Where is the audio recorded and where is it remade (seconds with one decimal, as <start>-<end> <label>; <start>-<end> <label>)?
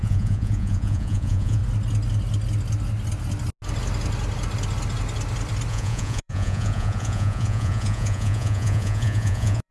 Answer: 0.0-1.6 remade; 1.6-5.7 recorded; 5.7-9.7 remade